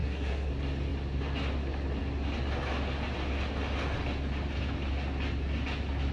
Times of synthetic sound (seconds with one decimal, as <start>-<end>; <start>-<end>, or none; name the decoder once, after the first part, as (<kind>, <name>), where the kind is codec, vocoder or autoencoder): 0.0-0.5 (codec, SNAC)